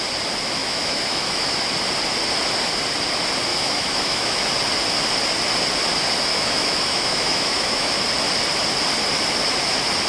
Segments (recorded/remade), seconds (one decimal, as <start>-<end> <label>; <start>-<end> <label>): 0.0-0.6 recorded; 0.6-1.6 remade; 1.6-3.5 recorded; 3.5-4.5 remade; 4.5-6.3 recorded; 6.3-8.0 remade; 8.0-10.1 recorded